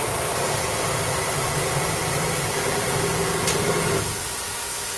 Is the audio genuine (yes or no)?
yes